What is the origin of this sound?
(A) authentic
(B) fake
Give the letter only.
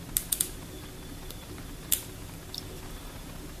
A